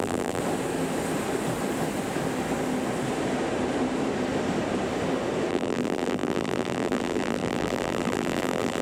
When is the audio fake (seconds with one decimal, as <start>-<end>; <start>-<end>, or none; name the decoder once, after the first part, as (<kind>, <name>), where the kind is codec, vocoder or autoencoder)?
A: 0.0-0.4 (vocoder, BigVGAN v2); 5.5-8.8